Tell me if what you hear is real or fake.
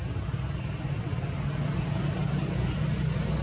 real